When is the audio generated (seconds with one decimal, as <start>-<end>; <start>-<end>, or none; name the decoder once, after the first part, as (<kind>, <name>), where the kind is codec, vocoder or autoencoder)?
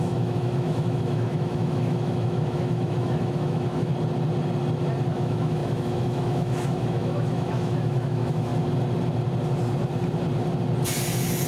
0.0-3.9 (autoencoder, DAC-VAE); 5.1-8.5